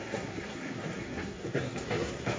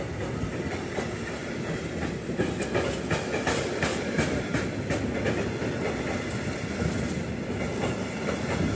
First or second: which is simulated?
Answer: first